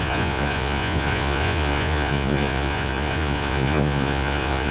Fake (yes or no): yes